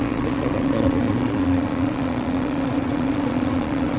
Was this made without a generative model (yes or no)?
no